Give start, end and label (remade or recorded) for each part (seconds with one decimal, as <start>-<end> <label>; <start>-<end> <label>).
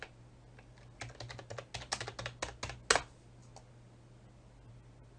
0.0-5.2 recorded